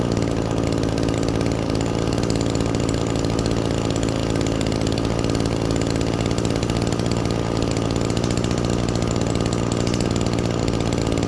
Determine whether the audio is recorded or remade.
recorded